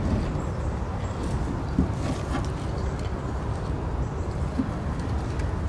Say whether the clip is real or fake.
real